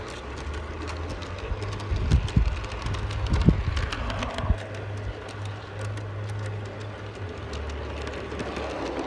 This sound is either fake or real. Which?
real